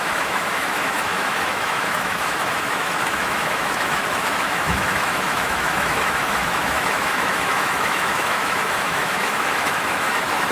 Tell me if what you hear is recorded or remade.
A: remade